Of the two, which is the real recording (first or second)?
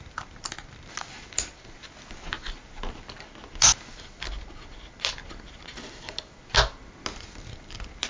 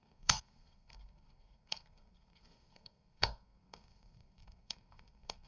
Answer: first